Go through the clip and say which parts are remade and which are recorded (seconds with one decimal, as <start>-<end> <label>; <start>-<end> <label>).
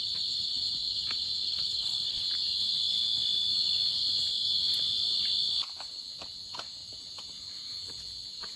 0.0-1.5 recorded; 1.5-2.2 remade; 2.2-8.6 recorded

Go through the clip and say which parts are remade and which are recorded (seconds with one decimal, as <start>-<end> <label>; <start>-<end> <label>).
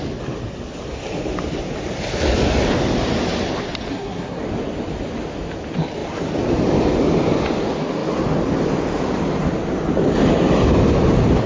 0.0-3.9 recorded; 3.9-4.4 remade; 4.4-11.5 recorded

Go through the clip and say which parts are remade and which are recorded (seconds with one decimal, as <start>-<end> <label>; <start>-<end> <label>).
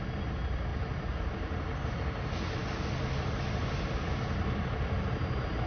0.0-5.7 recorded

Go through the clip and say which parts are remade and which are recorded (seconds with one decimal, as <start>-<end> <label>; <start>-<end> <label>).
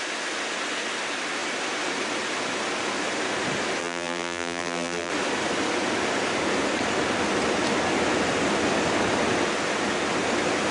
0.0-3.8 recorded; 3.8-5.1 remade; 5.1-10.7 recorded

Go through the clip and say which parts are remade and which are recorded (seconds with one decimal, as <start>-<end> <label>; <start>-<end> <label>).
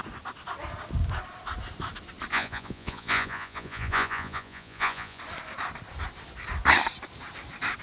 0.0-2.3 recorded; 2.3-5.2 remade; 5.2-7.8 recorded